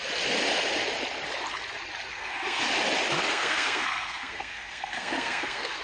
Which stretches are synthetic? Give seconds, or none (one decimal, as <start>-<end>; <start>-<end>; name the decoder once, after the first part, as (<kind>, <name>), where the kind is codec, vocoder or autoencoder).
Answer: 2.1-2.6 (codec, SNAC); 3.3-5.8